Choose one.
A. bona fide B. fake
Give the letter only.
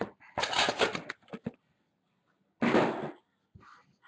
A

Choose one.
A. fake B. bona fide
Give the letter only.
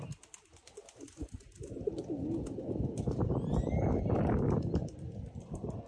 B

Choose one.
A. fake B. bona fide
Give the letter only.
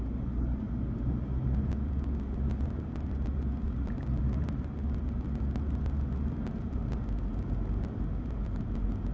B